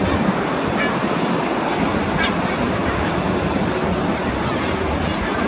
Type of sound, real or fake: real